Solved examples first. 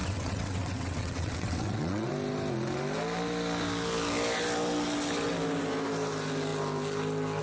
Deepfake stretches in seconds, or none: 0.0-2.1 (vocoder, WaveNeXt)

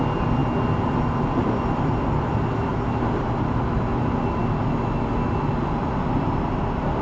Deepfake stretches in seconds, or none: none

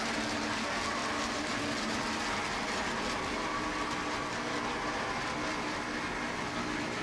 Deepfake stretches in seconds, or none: none

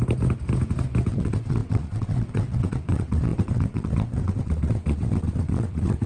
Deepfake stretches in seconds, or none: 1.1-6.1 (vocoder, WaveNeXt)

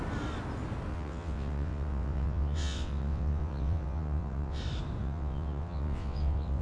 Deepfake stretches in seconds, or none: 0.9-4.6 (vocoder, WaveNeXt); 5.0-6.6

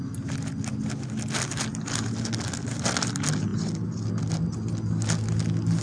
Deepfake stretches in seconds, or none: none

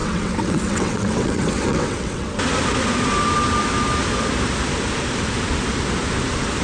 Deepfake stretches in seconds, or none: 0.0-2.3 (vocoder, WaveNeXt)

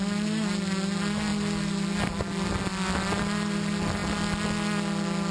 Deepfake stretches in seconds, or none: none